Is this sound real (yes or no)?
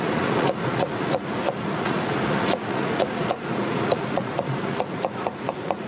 no